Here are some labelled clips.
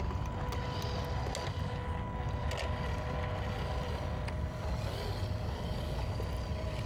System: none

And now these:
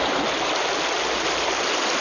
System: none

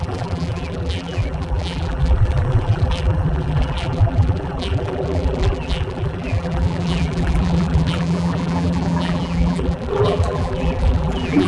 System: vocoder, BigVGAN v2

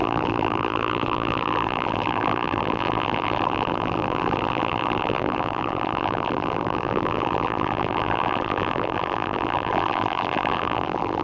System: vocoder, BigVGAN v2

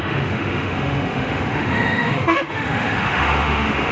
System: autoencoder, DAC-VAE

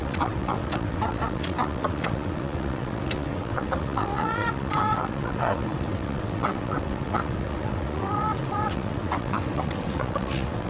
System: vocoder, WaveNeXt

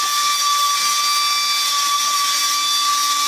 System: none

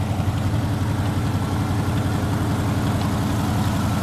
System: none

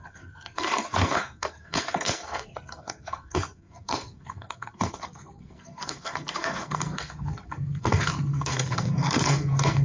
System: codec, SNAC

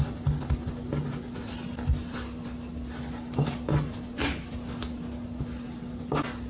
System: none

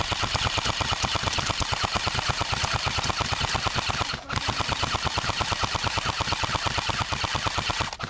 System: none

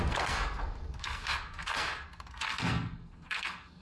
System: codec, SNAC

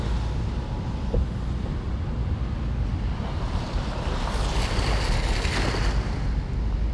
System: none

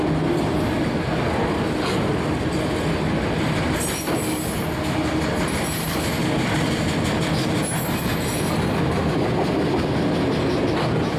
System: none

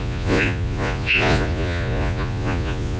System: vocoder, Vocos